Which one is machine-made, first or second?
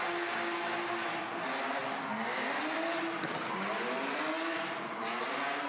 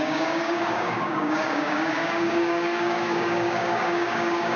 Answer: second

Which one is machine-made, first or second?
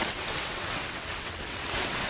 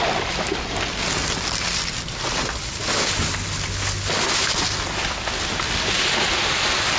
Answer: first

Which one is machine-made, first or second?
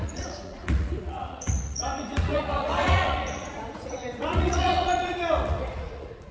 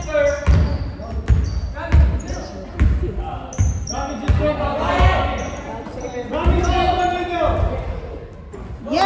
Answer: first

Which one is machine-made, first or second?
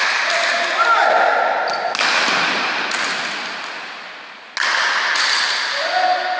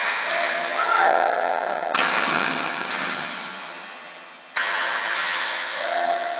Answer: second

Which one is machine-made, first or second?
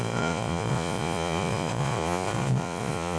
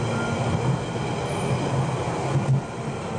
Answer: first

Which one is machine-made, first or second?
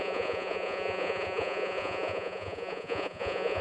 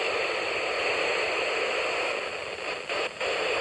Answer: first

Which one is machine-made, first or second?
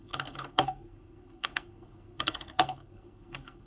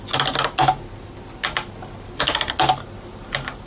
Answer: first